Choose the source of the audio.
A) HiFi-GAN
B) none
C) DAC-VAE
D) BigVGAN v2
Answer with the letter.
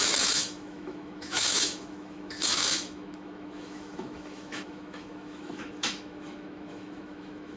C